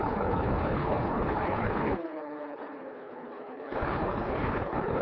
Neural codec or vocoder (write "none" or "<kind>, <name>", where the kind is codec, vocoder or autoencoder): codec, HILCodec